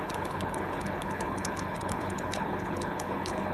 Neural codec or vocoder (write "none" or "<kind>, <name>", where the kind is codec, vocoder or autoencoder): codec, HILCodec